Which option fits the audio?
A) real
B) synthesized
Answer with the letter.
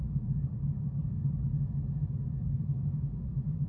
B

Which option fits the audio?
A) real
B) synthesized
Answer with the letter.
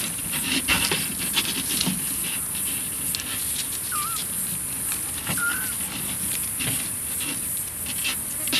A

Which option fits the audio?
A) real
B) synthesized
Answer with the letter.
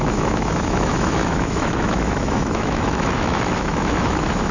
B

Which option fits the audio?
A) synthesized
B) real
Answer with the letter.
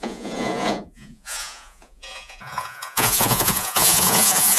A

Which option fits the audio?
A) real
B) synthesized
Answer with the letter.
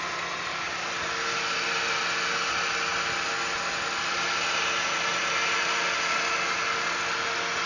A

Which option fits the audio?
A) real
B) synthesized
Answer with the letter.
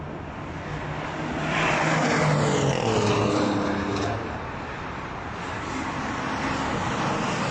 A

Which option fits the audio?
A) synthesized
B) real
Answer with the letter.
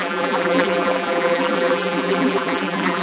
A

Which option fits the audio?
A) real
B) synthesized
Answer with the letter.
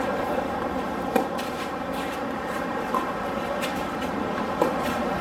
B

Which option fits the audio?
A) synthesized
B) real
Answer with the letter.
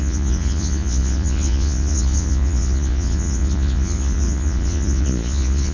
A